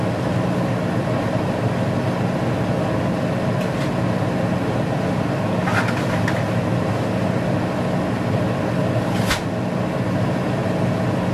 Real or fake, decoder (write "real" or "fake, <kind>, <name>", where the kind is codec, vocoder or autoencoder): real